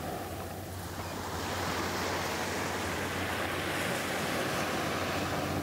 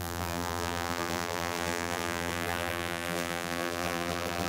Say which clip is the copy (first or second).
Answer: second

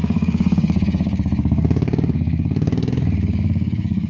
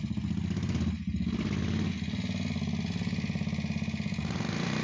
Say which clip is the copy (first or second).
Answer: first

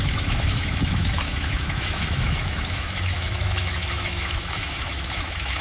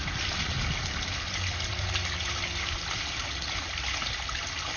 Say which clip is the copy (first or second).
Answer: first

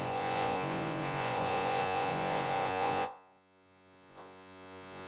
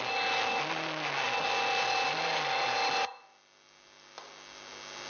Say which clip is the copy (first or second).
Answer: first